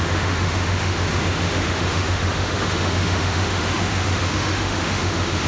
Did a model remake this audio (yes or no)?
yes